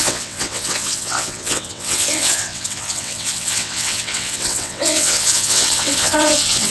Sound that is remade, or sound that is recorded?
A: remade